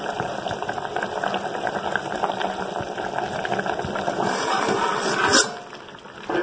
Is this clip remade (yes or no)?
no